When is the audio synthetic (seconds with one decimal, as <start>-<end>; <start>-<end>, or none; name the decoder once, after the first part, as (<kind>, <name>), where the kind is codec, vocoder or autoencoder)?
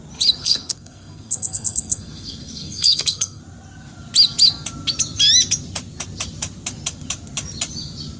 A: 0.4-3.4 (codec, SNAC)